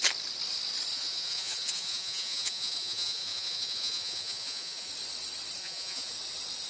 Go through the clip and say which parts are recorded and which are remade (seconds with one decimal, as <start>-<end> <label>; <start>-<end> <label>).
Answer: 0.0-0.9 recorded; 0.9-4.9 remade; 4.9-5.6 recorded; 5.6-6.1 remade; 6.1-6.7 recorded